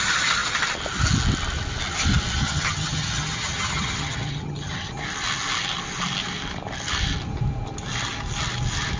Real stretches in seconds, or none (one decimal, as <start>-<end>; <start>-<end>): 0.0-2.4; 4.9-9.0